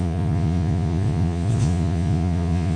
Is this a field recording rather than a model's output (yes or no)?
no